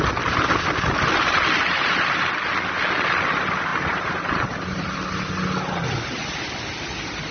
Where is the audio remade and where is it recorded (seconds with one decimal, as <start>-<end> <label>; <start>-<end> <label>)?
0.0-1.6 recorded; 1.6-2.3 remade; 2.3-3.7 recorded; 3.7-5.2 remade; 5.2-7.3 recorded